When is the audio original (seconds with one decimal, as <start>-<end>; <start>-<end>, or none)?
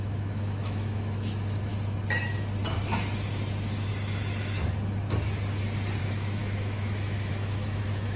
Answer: 1.7-6.0